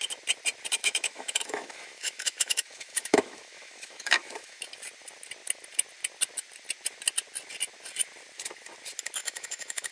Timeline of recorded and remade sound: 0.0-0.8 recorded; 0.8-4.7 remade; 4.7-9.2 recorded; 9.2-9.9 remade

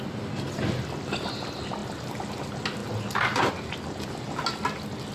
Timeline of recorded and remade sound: 0.0-5.1 recorded

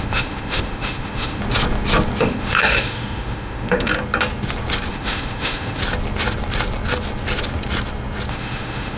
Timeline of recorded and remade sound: 0.0-1.4 remade; 1.4-2.2 recorded; 2.2-3.9 remade; 3.9-4.9 recorded; 4.9-5.8 remade; 5.8-8.3 recorded; 8.3-9.0 remade

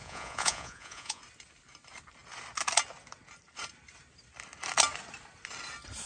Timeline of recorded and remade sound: 0.0-1.2 remade; 1.2-6.1 recorded

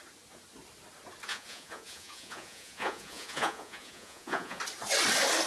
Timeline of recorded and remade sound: 0.0-1.3 recorded; 1.3-4.6 remade; 4.6-5.5 recorded

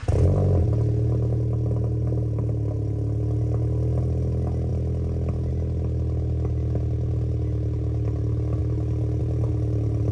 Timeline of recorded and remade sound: 0.0-10.1 recorded